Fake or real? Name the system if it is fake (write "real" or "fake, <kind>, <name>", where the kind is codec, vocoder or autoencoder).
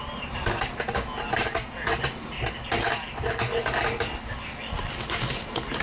real